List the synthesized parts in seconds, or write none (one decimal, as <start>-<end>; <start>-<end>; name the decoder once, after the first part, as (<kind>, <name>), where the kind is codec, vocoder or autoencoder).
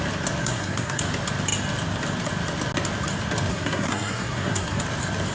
0.4-1.0 (codec, SNAC); 3.5-4.8